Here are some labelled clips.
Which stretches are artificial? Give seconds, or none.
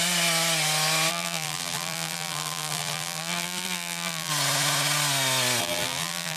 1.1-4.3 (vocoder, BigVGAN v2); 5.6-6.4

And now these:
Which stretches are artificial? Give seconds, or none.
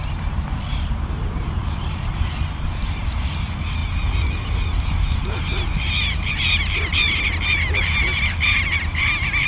0.7-3.2 (vocoder, BigVGAN v2)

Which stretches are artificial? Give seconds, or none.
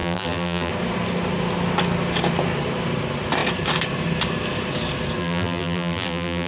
0.0-0.7 (vocoder, BigVGAN v2); 5.2-6.5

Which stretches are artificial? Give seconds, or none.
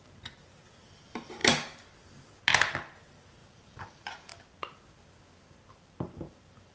0.0-1.4 (vocoder, BigVGAN v2); 3.0-4.3; 5.8-6.7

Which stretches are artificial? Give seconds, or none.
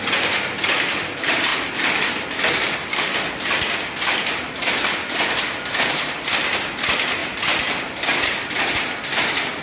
1.5-3.0 (vocoder, BigVGAN v2); 7.2-8.6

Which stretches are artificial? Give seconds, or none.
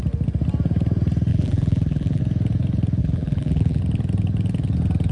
1.3-2.2 (vocoder, BigVGAN v2); 3.0-3.8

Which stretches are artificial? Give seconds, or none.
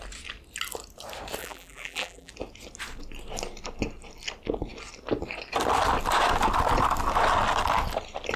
1.4-2.3 (vocoder, BigVGAN v2)